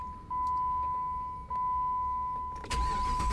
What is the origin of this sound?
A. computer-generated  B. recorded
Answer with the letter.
B